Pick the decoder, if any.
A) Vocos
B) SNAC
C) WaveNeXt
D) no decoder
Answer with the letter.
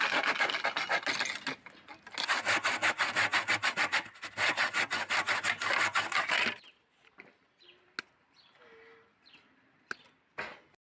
D